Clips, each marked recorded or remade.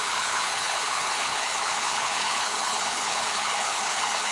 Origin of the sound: remade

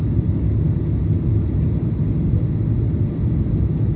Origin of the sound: recorded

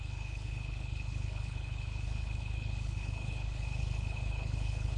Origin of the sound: remade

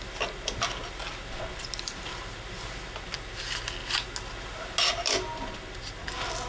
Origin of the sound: recorded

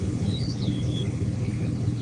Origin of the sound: remade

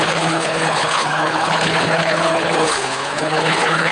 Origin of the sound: remade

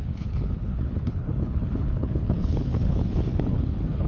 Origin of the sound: remade